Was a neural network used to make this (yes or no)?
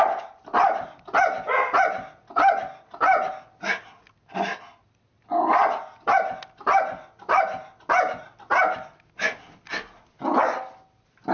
no